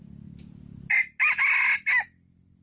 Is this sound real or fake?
real